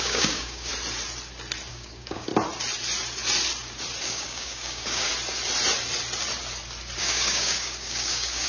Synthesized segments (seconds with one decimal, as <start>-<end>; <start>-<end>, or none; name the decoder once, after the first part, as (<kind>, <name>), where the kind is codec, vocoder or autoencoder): 0.0-0.7 (codec, DAC); 1.7-2.3; 4.0-5.1; 7.0-8.5